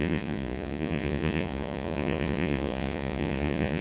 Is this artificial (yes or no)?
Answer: yes